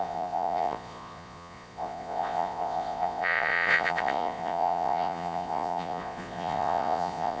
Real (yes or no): no